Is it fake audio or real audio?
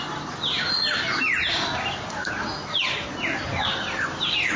real